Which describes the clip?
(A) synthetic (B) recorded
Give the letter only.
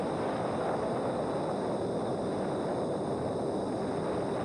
B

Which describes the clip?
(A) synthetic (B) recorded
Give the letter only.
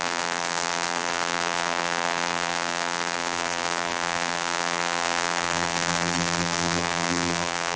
A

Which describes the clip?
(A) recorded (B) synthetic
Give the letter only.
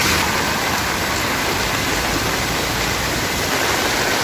B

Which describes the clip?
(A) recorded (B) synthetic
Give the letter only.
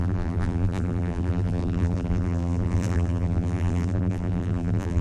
B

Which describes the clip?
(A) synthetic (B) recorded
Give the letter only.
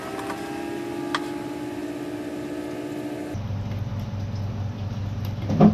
B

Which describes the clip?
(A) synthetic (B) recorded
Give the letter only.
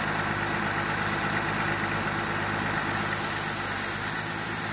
B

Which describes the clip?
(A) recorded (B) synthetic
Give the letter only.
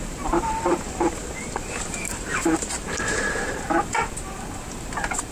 B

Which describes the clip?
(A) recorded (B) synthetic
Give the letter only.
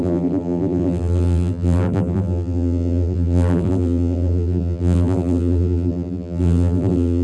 B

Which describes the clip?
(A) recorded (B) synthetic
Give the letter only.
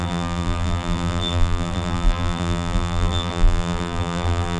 B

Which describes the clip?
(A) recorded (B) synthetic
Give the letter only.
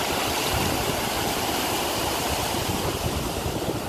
A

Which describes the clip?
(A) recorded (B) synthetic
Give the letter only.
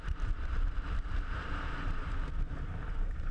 B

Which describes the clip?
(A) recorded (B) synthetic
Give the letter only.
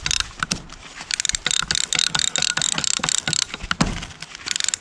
A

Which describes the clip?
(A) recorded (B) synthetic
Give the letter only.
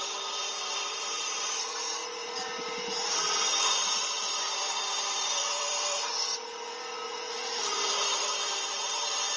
B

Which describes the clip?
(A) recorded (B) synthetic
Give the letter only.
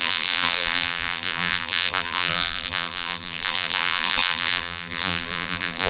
B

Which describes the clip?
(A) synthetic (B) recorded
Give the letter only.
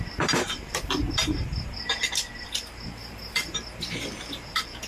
A